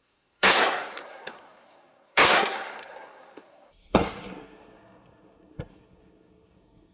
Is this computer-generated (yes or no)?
yes